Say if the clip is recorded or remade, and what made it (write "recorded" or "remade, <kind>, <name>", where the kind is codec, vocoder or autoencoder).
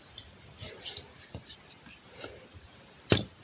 recorded